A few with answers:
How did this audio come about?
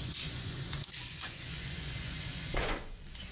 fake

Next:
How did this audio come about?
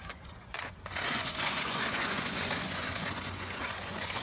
fake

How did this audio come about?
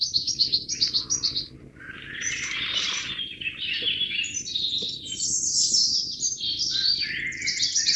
fake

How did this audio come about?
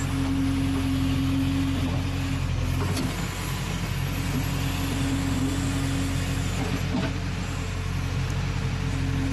real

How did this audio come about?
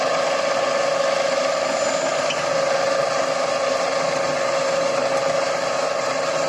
real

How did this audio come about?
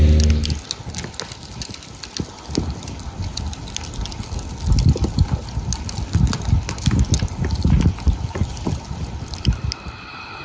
real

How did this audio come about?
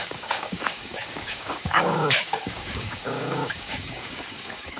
fake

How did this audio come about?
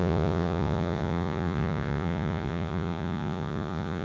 fake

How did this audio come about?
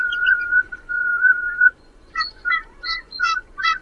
fake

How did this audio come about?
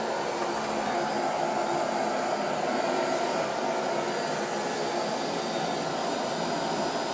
real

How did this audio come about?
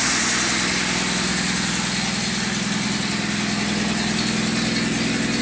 real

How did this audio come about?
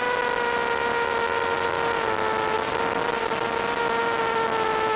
real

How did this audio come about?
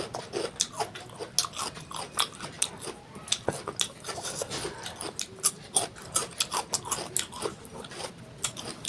real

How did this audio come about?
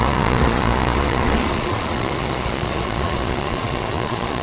fake